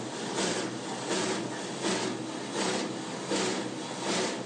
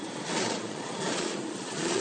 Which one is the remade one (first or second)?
second